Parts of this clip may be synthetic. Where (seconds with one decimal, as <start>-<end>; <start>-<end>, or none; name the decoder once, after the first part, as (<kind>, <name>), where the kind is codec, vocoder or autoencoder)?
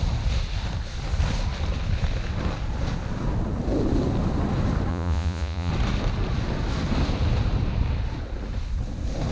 4.9-5.7 (vocoder, Vocos)